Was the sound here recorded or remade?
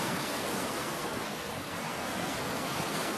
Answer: remade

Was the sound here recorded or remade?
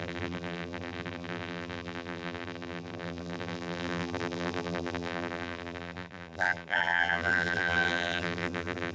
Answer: remade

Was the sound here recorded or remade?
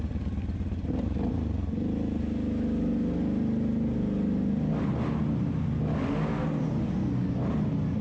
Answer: recorded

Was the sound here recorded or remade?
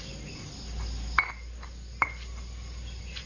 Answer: recorded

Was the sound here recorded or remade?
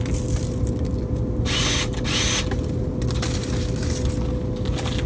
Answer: recorded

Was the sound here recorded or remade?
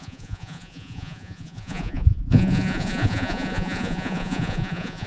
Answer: remade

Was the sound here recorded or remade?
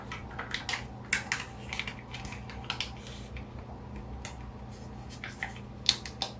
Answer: recorded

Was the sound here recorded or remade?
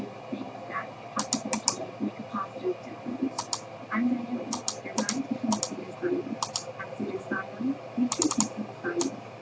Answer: recorded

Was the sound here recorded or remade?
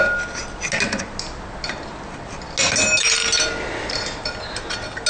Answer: recorded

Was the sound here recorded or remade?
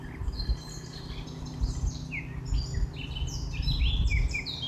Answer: recorded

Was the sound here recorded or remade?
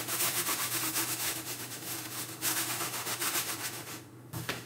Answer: remade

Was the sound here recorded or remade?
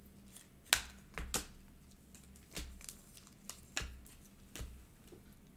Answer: recorded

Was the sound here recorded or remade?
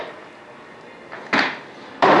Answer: remade